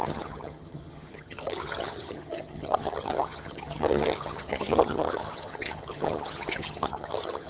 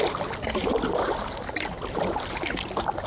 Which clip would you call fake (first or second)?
first